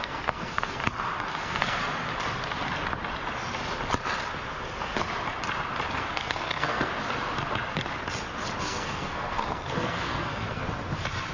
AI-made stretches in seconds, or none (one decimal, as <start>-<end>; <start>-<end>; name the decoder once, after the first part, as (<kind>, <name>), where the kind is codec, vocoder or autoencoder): 0.0-0.8 (codec, SNAC); 1.4-1.8; 5.9-6.9; 8.6-10.6